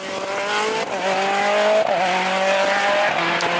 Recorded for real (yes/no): yes